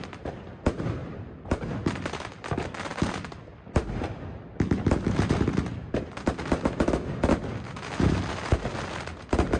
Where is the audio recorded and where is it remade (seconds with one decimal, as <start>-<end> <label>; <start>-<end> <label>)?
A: 0.0-1.0 recorded; 1.0-1.6 remade; 1.6-9.6 recorded